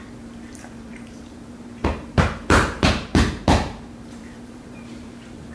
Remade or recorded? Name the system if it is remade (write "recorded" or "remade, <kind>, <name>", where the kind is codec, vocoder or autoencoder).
remade, vocoder, BigVGAN v2